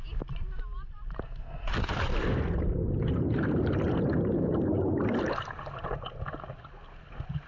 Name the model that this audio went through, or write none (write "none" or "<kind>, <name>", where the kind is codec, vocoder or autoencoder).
none